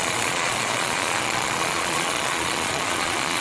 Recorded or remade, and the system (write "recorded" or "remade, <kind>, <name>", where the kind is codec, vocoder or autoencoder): remade, vocoder, Vocos